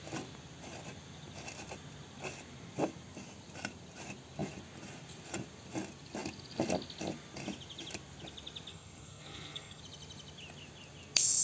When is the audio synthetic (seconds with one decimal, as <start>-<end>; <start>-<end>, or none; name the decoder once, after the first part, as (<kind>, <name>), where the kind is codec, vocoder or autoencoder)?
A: 8.7-9.8 (codec, SNAC)